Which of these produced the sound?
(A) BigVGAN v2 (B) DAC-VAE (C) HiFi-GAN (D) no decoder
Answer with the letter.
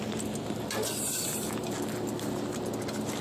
D